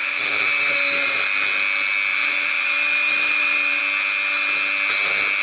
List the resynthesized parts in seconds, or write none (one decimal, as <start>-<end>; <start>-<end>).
0.0-1.2; 2.1-3.8